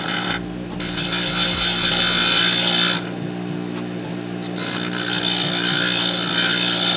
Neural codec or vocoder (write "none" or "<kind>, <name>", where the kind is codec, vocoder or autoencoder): none